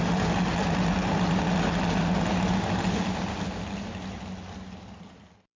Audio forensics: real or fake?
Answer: real